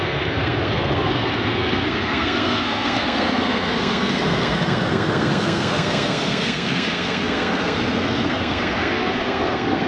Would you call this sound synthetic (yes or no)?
yes